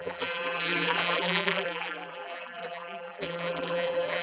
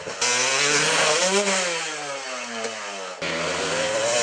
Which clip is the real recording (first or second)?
second